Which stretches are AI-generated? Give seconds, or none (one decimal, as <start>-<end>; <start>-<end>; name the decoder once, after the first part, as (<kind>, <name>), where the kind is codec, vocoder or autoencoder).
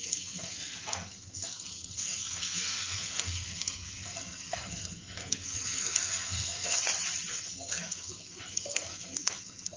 0.0-6.8 (codec, SNAC); 7.3-9.8